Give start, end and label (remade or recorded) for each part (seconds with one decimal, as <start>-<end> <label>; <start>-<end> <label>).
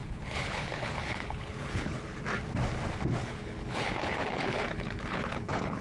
0.0-2.2 remade; 2.2-3.2 recorded; 3.2-5.8 remade